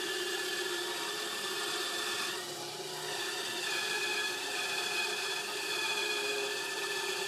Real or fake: fake